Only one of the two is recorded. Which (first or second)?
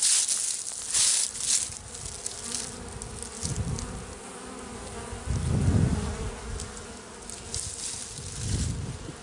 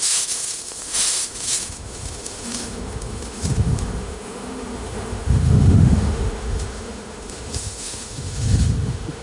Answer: first